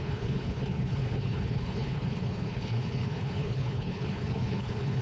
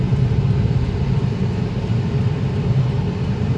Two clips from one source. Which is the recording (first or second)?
second